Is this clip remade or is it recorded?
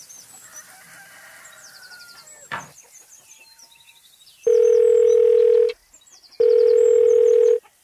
recorded